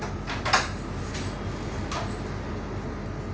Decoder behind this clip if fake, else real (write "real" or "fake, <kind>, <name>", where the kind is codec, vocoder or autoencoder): real